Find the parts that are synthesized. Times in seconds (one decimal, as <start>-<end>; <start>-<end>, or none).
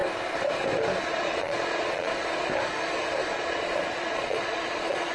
1.1-2.1; 3.3-5.1